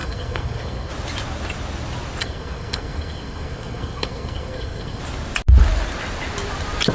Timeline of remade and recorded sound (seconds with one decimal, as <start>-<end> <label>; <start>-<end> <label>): 0.0-0.9 remade; 0.9-2.2 recorded; 2.2-5.0 remade; 5.0-6.9 recorded

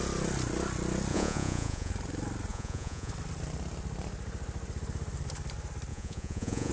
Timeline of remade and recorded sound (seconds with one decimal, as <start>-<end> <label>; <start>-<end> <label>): 0.0-1.1 recorded; 1.1-1.9 remade; 1.9-2.5 recorded; 2.5-3.1 remade; 3.1-5.9 recorded; 5.9-6.7 remade

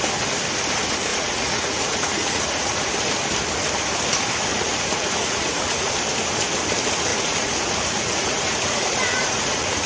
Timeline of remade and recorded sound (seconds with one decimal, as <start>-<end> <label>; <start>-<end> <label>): 0.0-1.1 recorded; 1.1-2.9 remade; 2.9-4.5 recorded; 4.5-5.9 remade; 5.9-7.1 recorded; 7.1-9.9 remade

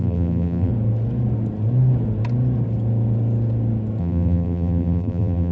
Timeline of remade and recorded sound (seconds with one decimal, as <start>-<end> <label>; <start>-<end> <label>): 0.0-0.7 remade; 0.7-4.0 recorded; 4.0-5.5 remade

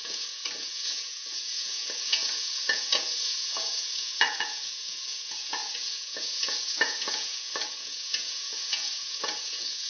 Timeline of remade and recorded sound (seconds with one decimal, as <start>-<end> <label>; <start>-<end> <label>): 0.0-9.9 remade